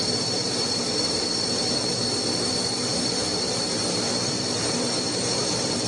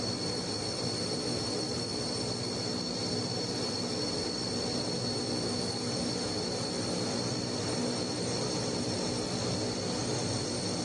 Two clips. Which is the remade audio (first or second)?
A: first